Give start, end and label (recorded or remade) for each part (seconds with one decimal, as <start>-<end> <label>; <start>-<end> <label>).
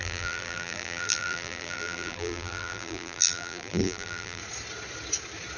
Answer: 0.0-4.4 remade; 4.4-5.6 recorded